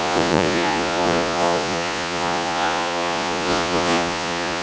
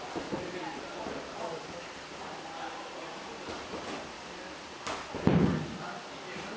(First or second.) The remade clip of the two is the first